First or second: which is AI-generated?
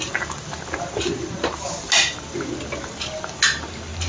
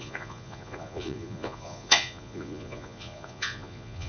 second